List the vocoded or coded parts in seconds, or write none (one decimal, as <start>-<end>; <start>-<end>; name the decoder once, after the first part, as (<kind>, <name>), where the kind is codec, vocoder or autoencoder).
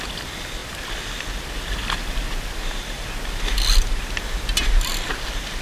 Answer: none